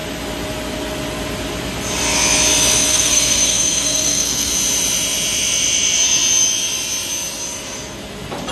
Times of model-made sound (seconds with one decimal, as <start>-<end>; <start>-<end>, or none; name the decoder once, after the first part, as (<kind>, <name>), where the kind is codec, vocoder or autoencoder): 2.9-4.5 (codec, SNAC)